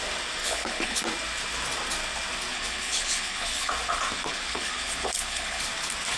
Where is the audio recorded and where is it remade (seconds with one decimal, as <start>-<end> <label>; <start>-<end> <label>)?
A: 0.0-0.4 recorded; 0.4-1.0 remade; 1.0-2.5 recorded; 2.5-3.7 remade; 3.7-4.3 recorded; 4.3-5.6 remade; 5.6-6.2 recorded